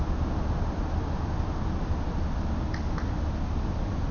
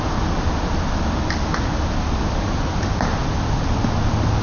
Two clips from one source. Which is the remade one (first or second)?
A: second